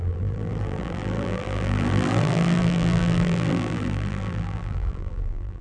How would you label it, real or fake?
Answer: fake